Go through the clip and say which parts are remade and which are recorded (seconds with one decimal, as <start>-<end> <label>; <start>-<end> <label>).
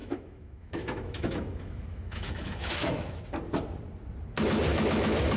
0.0-3.2 remade; 3.2-4.7 recorded; 4.7-5.4 remade